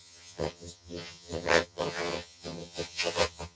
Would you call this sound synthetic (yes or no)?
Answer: yes